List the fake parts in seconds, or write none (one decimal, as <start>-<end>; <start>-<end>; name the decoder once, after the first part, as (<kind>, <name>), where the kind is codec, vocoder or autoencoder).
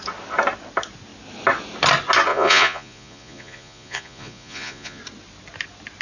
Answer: 2.3-5.0 (vocoder, Vocos)